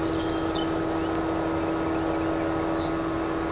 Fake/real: real